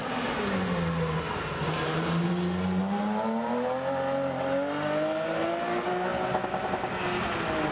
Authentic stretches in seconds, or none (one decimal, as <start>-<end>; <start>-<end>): 0.0-7.7